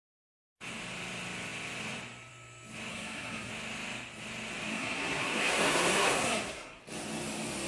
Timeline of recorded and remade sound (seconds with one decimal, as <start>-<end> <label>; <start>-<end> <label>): 0.0-2.9 recorded; 2.9-3.5 remade; 3.5-4.7 recorded; 4.7-6.8 remade; 6.8-7.7 recorded